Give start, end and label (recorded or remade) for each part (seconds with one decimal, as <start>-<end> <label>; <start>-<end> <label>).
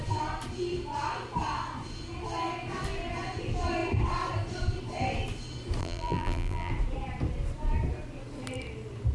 0.0-5.8 recorded; 5.8-6.7 remade; 6.7-9.1 recorded